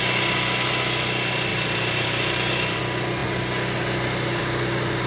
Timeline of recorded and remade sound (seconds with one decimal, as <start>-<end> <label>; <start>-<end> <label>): 0.0-1.5 recorded; 1.5-2.8 remade; 2.8-5.1 recorded